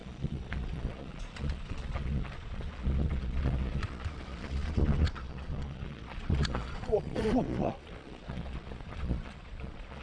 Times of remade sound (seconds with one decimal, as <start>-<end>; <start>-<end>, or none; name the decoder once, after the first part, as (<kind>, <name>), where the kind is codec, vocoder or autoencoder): 0.0-10.0 (vocoder, Vocos)